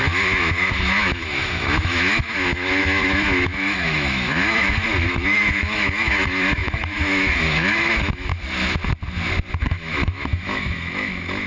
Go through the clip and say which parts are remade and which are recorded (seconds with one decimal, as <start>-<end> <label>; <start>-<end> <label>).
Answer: 0.0-8.3 remade; 8.3-9.6 recorded; 9.6-11.5 remade